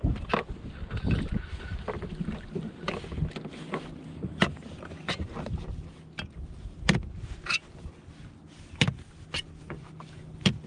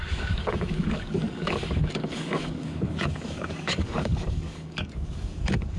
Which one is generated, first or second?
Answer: second